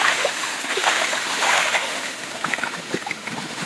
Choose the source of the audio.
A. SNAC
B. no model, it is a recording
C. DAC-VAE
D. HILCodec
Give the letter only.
C